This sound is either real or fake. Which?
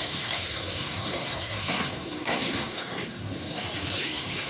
fake